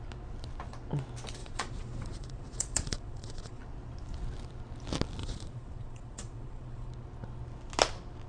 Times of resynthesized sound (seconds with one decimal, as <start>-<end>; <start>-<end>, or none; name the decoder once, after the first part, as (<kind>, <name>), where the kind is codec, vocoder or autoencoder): 1.4-3.6 (vocoder, Vocos); 5.2-6.9